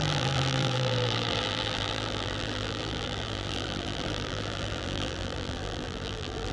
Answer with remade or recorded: remade